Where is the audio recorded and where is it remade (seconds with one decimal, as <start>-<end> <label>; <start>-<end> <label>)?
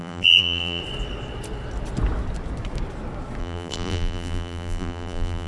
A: 0.0-0.8 remade; 0.8-3.4 recorded; 3.4-5.5 remade